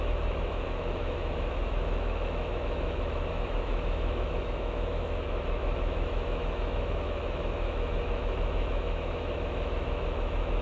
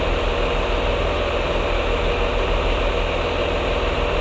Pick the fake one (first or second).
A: first